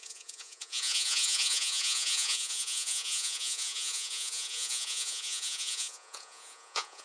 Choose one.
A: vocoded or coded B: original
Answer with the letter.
A